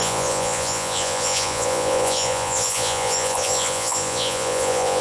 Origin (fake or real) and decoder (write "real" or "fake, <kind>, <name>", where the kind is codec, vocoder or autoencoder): fake, vocoder, Vocos